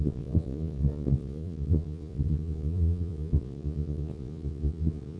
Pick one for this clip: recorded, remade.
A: remade